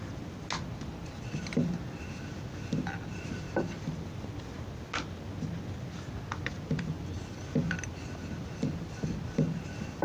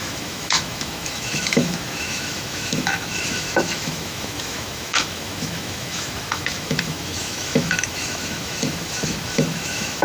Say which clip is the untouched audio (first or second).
first